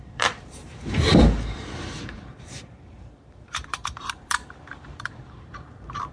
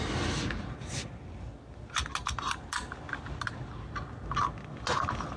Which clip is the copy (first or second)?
first